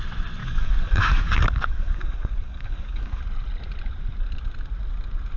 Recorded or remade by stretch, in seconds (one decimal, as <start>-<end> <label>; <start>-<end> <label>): 0.0-0.4 recorded; 0.4-3.2 remade; 3.2-5.4 recorded